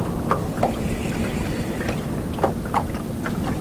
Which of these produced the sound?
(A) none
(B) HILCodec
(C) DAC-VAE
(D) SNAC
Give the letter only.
A